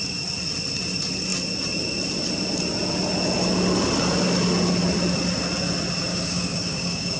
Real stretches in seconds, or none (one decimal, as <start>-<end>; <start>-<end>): 0.0-6.1